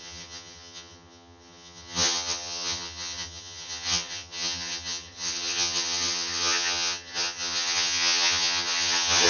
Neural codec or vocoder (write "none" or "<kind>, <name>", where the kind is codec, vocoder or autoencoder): vocoder, HiFi-GAN